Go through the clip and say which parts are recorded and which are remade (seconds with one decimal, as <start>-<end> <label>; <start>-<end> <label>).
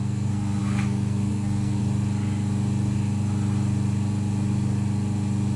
0.0-1.8 remade; 1.8-5.6 recorded